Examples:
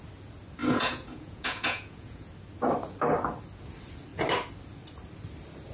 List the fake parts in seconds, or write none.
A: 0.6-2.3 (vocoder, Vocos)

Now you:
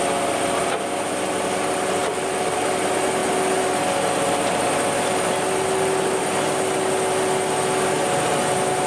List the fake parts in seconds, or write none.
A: 2.0-2.6 (vocoder, BigVGAN v2)

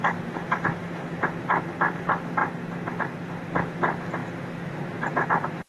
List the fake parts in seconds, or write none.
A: 0.7-1.2 (autoencoder, DAC-VAE)

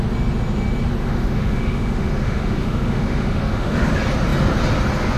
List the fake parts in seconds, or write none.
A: 1.0-3.9 (autoencoder, DAC-VAE)